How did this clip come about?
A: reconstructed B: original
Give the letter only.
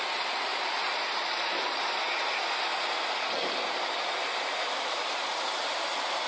A